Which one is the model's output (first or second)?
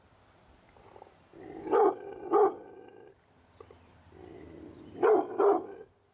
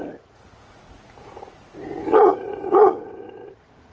second